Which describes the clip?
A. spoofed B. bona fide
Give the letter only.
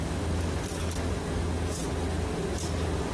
B